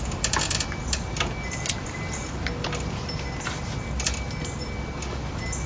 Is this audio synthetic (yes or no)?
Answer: no